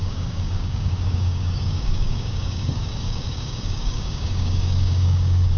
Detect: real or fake fake